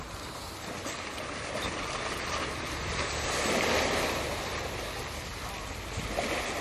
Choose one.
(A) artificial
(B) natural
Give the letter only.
B